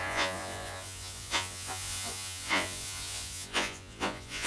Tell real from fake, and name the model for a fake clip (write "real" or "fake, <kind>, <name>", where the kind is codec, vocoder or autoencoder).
fake, vocoder, Vocos